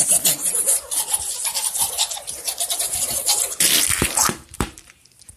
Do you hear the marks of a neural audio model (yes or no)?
yes